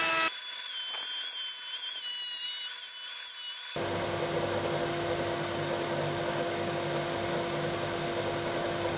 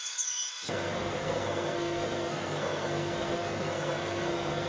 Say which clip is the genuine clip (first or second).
first